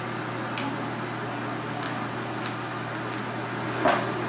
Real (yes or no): yes